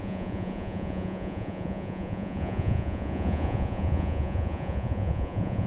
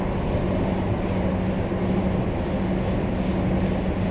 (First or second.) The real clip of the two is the second